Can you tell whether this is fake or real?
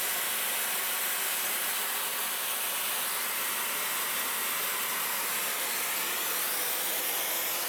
real